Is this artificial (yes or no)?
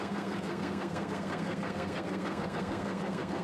yes